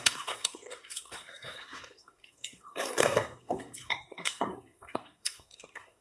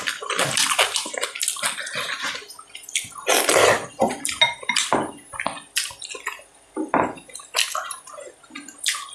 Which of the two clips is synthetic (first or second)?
first